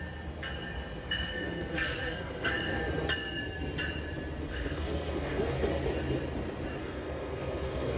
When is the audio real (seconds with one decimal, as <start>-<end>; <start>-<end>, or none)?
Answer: 0.0-1.0; 2.8-4.4; 5.7-6.8